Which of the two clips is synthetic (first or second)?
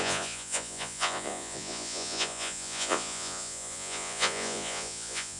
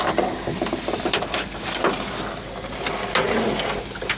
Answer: first